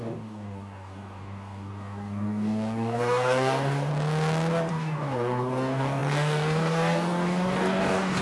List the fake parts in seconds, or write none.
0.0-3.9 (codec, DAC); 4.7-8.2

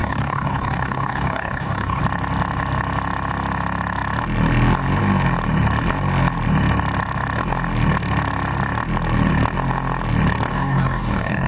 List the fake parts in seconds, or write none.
0.0-2.0 (codec, DAC); 10.5-11.5

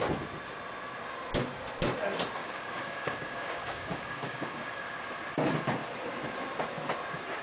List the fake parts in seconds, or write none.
2.4-4.8 (codec, DAC)

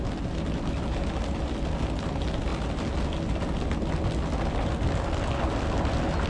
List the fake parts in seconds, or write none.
none

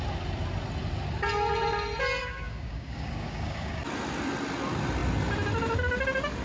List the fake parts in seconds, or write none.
2.2-3.8 (codec, DAC)

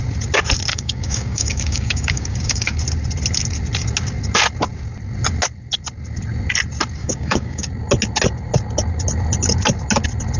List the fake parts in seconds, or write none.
0.7-2.8 (codec, DAC); 7.0-7.7

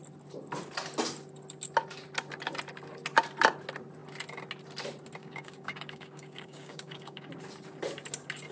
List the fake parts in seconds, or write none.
5.2-7.3 (codec, DAC)

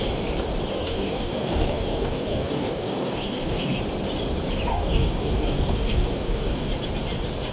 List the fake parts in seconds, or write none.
0.7-3.8 (codec, DAC); 4.7-6.7